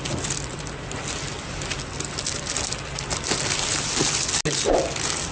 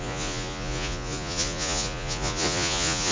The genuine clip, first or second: first